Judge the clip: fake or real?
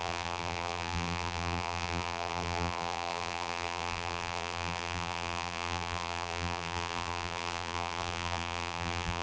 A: fake